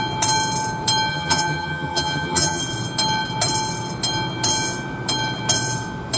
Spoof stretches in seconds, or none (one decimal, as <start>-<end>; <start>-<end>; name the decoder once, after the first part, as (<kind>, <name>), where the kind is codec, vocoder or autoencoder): 1.1-2.6 (vocoder, HiFi-GAN)